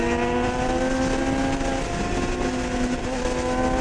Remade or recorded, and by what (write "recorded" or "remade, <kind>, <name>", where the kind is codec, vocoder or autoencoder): recorded